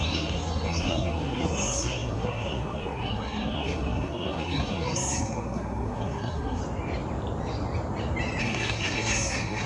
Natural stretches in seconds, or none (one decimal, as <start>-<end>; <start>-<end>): 6.6-8.4